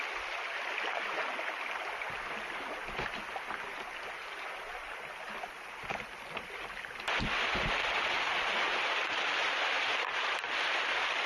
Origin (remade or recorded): recorded